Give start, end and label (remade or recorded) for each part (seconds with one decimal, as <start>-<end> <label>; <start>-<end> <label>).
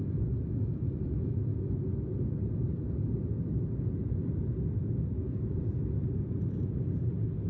0.0-4.8 recorded; 4.8-5.6 remade; 5.6-7.5 recorded